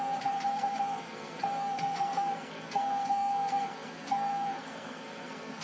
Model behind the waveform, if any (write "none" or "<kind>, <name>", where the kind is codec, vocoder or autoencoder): codec, SNAC